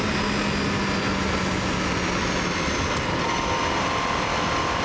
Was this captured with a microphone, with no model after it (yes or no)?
yes